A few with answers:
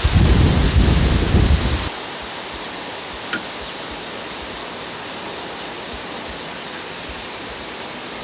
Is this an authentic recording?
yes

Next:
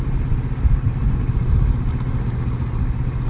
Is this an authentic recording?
yes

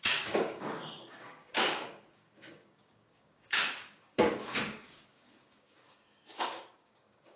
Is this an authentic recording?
no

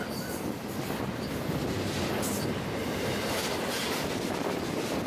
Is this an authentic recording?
yes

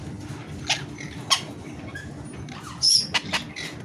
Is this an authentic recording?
yes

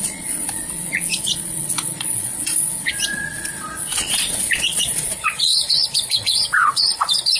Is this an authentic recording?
no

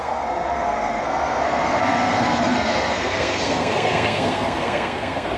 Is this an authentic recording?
no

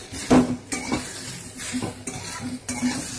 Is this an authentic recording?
yes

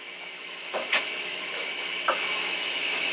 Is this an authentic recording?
no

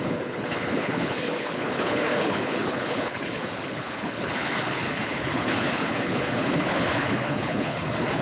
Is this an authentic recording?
no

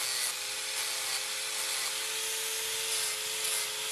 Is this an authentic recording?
yes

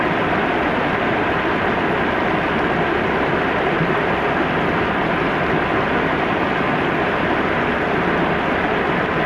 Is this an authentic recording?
yes